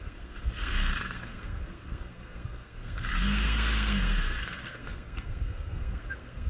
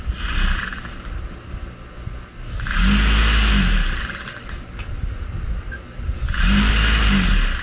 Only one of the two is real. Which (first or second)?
second